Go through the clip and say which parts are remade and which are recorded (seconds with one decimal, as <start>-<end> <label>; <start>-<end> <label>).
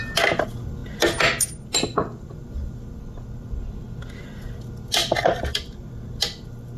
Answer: 0.0-6.8 recorded